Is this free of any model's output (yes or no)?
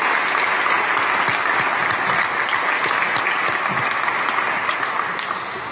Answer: yes